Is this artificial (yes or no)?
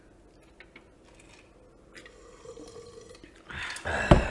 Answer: no